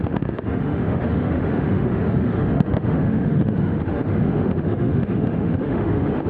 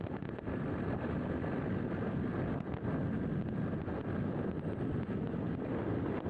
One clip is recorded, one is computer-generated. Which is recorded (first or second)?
second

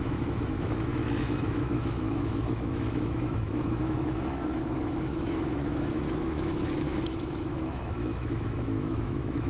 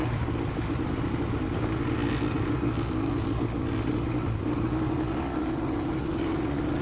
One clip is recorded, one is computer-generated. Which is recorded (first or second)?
second